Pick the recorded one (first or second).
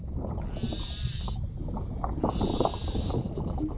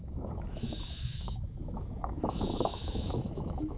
first